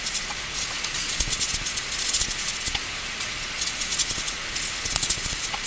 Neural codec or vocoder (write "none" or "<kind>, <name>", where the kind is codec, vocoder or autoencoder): vocoder, Vocos